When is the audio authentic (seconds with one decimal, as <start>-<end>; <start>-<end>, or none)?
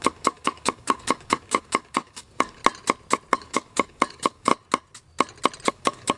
2.6-3.3; 4.5-5.7